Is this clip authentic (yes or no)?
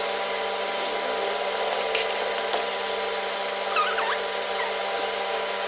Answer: yes